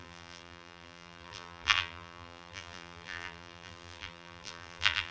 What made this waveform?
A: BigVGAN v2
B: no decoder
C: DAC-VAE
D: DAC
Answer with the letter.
A